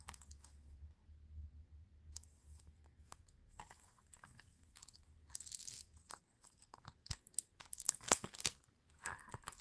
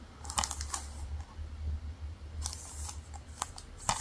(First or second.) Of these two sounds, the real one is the second